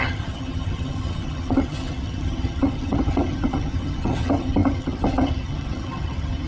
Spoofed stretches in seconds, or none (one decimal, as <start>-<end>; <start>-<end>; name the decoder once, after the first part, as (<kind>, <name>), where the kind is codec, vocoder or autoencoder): 0.0-6.5 (vocoder, HiFi-GAN)